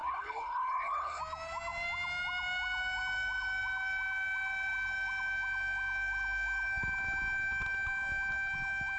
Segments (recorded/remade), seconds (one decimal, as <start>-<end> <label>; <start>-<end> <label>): 0.0-1.2 remade; 1.2-9.0 recorded